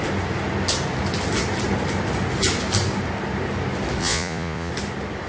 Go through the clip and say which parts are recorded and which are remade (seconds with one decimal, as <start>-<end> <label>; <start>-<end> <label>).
0.0-4.0 recorded; 4.0-4.7 remade; 4.7-5.3 recorded